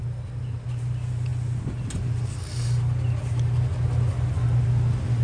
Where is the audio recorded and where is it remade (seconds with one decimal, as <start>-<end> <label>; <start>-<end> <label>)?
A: 0.0-5.2 recorded